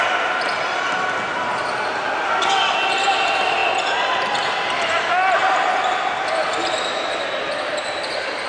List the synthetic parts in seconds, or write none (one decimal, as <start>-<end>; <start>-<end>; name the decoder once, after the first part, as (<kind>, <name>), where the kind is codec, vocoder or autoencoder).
none